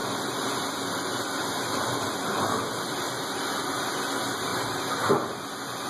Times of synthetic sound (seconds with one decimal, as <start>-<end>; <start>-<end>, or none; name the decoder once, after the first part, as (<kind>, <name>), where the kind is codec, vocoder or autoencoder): none